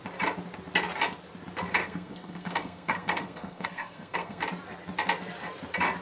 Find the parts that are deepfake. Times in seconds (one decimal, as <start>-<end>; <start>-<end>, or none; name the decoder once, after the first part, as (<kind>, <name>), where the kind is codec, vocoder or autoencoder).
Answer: 1.8-4.4 (codec, SNAC)